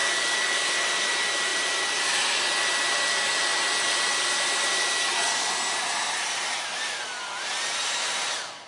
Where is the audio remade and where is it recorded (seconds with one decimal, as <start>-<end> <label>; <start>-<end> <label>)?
0.0-0.7 remade; 0.7-8.7 recorded